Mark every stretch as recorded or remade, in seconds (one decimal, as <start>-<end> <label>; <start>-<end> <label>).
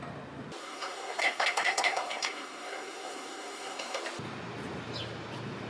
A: 0.0-0.6 recorded; 0.6-4.0 remade; 4.0-5.7 recorded